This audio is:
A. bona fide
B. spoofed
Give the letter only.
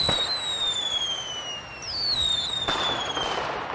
A